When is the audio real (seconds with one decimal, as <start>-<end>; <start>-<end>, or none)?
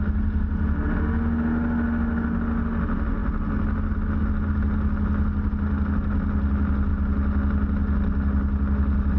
0.0-9.2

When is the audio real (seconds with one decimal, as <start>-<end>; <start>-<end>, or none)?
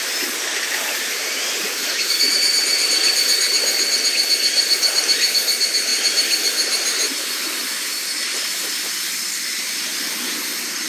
0.0-10.9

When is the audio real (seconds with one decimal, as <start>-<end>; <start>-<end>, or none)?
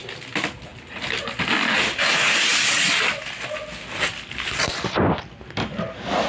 0.0-6.3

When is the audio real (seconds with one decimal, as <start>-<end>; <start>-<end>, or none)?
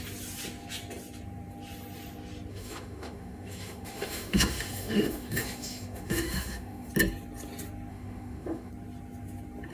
0.0-2.5; 6.9-7.9; 8.7-9.7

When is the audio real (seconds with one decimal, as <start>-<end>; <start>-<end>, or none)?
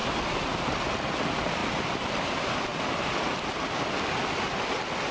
0.0-5.1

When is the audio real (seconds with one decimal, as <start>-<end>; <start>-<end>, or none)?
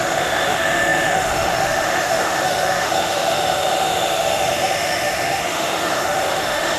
none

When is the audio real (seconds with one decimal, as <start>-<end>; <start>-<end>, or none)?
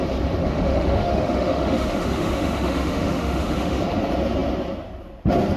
0.0-0.4; 3.8-5.6